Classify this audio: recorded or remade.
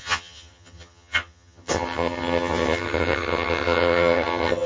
remade